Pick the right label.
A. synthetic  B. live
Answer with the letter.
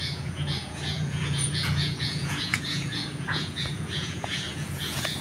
A